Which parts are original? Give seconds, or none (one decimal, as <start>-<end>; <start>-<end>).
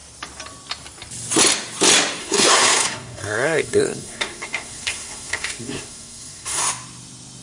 0.0-2.2; 6.6-7.4